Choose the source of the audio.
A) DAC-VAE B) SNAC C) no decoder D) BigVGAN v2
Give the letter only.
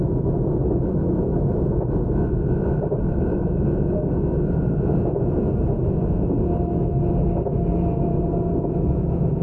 C